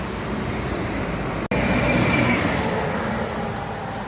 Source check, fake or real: real